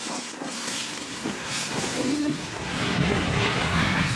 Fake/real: fake